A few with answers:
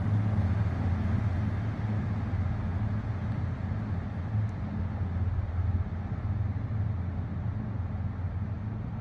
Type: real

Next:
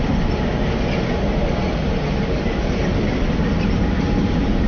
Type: real